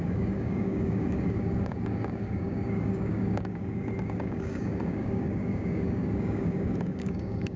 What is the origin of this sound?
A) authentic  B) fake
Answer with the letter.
B